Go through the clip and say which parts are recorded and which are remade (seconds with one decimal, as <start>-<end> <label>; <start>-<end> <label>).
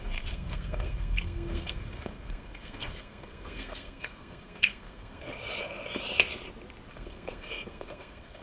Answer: 0.0-5.3 remade; 5.3-6.9 recorded; 6.9-8.4 remade